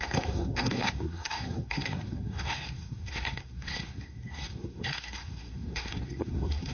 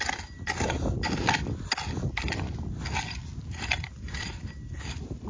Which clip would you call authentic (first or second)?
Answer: second